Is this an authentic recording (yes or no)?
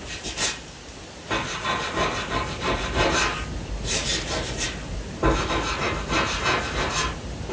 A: yes